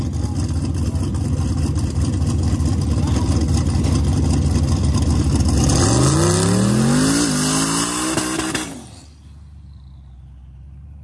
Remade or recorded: recorded